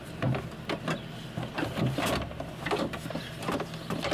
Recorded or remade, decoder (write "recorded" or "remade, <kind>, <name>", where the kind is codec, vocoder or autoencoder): recorded